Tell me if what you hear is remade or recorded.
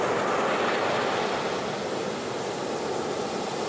recorded